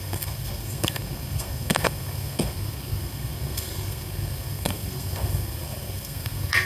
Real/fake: fake